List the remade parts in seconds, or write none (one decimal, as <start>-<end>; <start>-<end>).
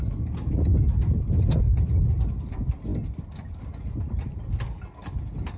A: none